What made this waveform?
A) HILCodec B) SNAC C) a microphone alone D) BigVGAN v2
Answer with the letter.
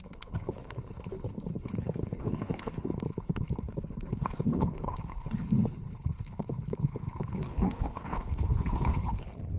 A